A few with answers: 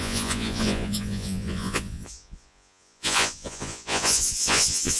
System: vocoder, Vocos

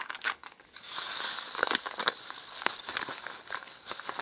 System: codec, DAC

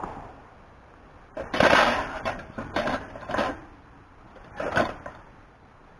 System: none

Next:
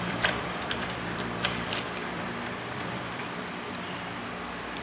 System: vocoder, BigVGAN v2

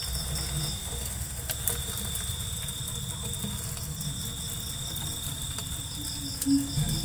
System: none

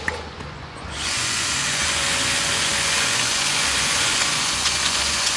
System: vocoder, Vocos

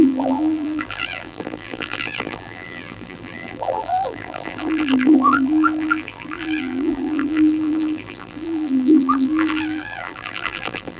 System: vocoder, BigVGAN v2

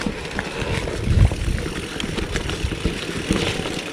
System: none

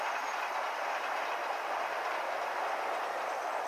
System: vocoder, BigVGAN v2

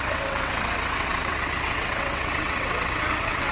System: vocoder, WaveNeXt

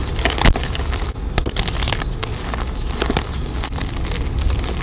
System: none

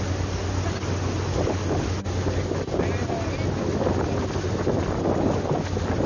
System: none